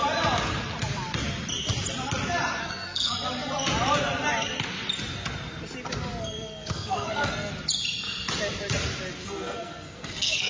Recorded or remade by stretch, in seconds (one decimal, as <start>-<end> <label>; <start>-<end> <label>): 0.0-2.6 recorded; 2.6-3.1 remade; 3.1-6.1 recorded; 6.1-7.5 remade; 7.5-9.2 recorded; 9.2-10.5 remade